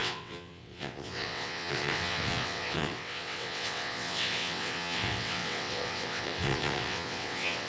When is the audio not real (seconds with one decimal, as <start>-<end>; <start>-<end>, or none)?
0.0-7.7